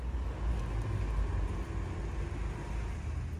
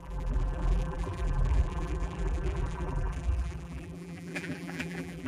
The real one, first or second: first